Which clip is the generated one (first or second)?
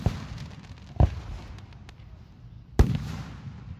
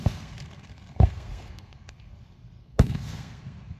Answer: second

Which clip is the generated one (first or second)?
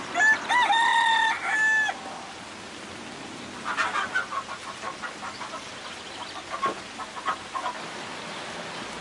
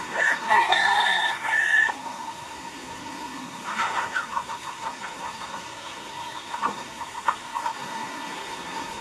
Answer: second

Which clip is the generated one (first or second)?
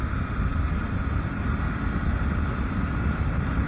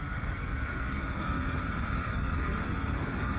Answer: second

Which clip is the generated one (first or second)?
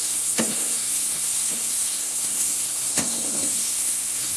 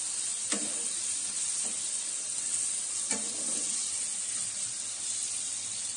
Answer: first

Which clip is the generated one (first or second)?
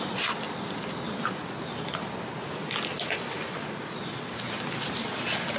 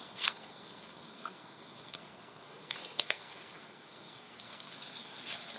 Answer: second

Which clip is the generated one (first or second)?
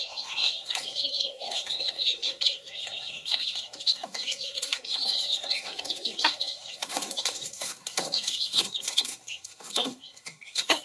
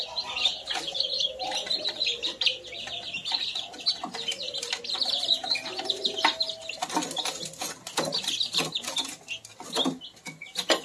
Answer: first